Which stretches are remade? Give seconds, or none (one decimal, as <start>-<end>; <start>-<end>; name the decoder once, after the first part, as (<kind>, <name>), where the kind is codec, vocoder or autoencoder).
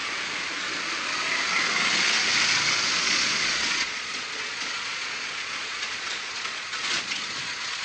3.0-7.8 (vocoder, Vocos)